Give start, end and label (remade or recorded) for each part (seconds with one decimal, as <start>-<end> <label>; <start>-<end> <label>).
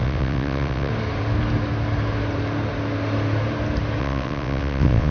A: 0.0-0.9 remade; 0.9-4.0 recorded; 4.0-5.1 remade